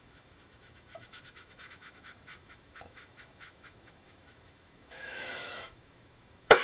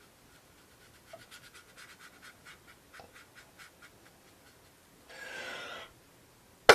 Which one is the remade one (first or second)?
first